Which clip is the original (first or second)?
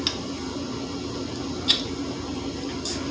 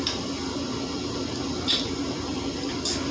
first